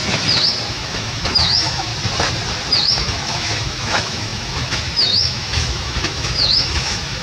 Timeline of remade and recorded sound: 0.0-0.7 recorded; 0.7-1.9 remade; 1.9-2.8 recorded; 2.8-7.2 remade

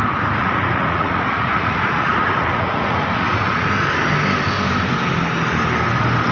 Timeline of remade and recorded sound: 0.0-0.4 recorded; 0.4-3.7 remade; 3.7-6.3 recorded

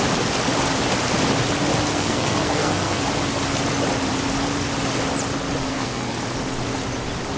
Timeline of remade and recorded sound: 0.0-1.9 recorded; 1.9-3.0 remade; 3.0-5.7 recorded; 5.7-6.2 remade; 6.2-7.4 recorded

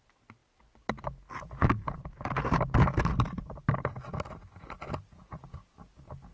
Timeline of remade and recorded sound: 0.0-6.3 recorded

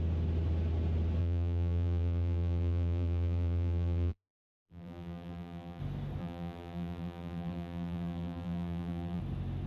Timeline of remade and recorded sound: 0.0-1.2 recorded; 1.2-5.8 remade; 5.8-6.2 recorded; 6.2-9.2 remade; 9.2-9.7 recorded

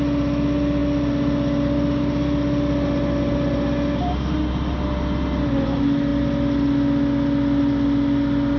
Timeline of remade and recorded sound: 0.0-8.6 recorded

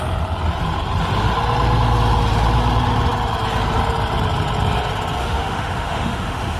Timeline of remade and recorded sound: 0.0-5.2 recorded; 5.2-6.6 remade